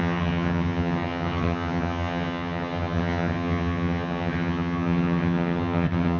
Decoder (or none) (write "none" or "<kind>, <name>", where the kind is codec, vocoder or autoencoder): vocoder, HiFi-GAN